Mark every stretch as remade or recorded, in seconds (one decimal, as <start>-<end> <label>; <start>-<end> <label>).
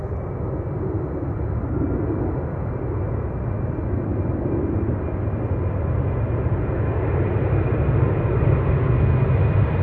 0.0-9.8 recorded